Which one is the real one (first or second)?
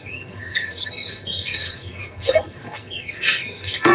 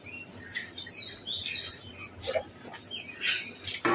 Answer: second